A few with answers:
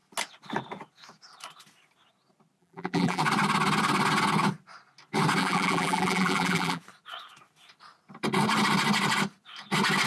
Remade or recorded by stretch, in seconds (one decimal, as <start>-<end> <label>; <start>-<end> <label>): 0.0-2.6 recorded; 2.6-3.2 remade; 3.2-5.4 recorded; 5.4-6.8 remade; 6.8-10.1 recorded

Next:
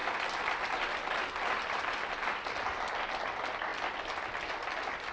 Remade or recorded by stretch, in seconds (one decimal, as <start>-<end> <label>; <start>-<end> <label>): 0.0-5.1 recorded

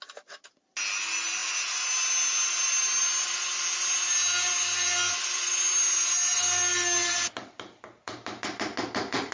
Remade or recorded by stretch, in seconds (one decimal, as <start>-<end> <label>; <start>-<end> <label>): 0.0-9.3 recorded

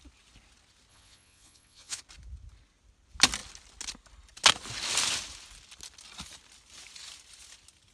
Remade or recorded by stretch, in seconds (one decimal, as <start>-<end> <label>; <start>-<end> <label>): 0.0-0.9 recorded; 0.9-2.0 remade; 2.0-7.9 recorded